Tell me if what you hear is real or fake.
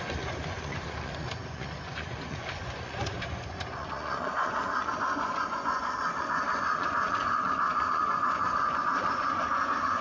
fake